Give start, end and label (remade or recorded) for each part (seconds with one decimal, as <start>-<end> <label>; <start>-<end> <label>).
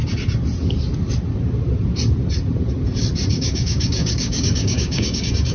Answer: 0.0-3.3 recorded; 3.3-5.5 remade